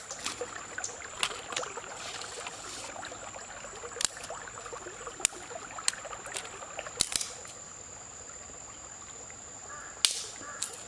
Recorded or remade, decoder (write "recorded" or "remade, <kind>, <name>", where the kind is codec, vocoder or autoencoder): recorded